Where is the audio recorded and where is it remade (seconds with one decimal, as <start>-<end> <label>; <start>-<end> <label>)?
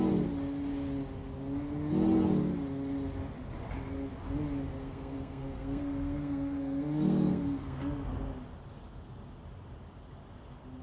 0.0-4.8 recorded; 4.8-8.1 remade; 8.1-10.8 recorded